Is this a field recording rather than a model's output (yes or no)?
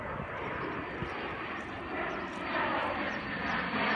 yes